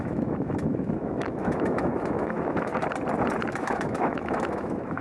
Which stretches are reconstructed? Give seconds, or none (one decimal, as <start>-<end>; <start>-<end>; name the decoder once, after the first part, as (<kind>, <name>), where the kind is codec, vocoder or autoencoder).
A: 0.0-2.7 (autoencoder, DAC-VAE); 3.5-5.0